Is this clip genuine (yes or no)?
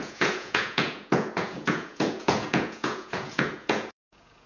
no